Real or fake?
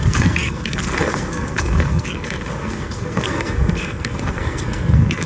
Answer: fake